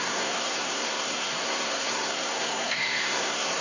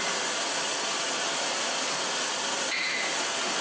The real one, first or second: second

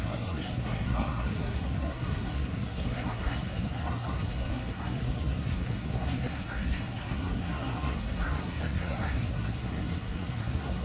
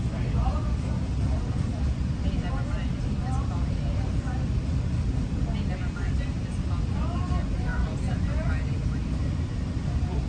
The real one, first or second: second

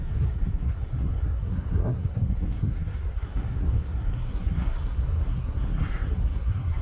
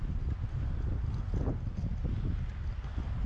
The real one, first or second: second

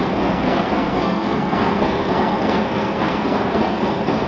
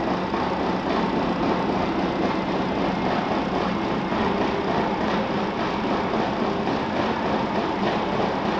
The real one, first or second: second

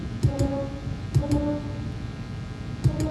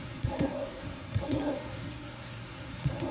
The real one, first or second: first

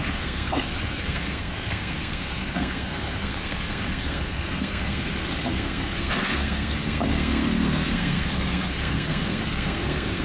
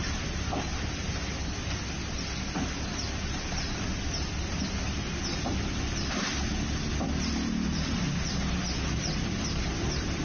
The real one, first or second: second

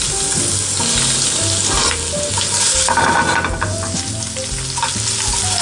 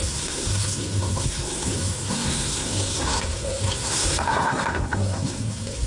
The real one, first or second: first